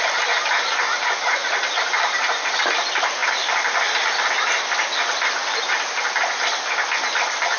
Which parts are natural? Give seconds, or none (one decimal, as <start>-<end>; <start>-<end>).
0.0-7.6